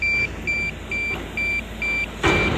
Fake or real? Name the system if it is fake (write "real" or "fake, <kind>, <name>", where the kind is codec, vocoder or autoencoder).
real